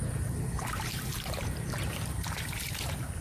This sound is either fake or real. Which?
fake